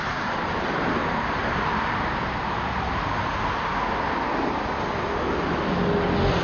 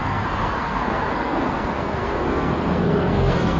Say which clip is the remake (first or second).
second